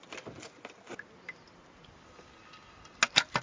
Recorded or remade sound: recorded